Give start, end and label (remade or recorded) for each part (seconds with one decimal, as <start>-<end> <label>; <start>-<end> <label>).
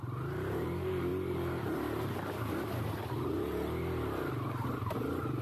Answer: 0.0-1.1 remade; 1.1-4.3 recorded; 4.3-5.4 remade